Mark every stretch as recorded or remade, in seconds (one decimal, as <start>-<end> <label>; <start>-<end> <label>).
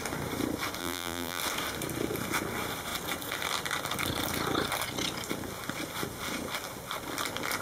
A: 0.0-0.8 recorded; 0.8-1.4 remade; 1.4-7.6 recorded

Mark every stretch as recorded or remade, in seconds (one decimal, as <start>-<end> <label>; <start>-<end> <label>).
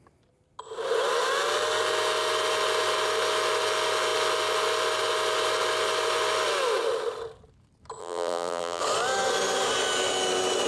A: 0.0-8.0 recorded; 8.0-8.8 remade; 8.8-10.7 recorded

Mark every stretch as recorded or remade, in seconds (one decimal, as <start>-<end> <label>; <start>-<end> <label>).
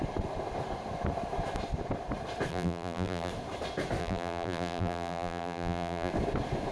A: 0.0-2.5 recorded; 2.5-3.3 remade; 3.3-4.0 recorded; 4.0-6.1 remade; 6.1-6.7 recorded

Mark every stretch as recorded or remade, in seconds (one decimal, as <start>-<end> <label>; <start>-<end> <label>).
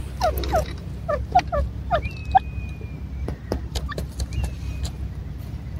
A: 0.0-5.8 recorded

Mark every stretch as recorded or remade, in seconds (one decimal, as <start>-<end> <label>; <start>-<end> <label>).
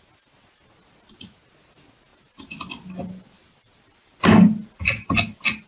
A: 0.0-5.7 recorded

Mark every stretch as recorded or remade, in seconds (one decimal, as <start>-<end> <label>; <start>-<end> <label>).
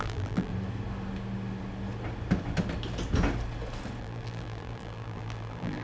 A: 0.0-0.5 remade; 0.5-4.0 recorded; 4.0-5.8 remade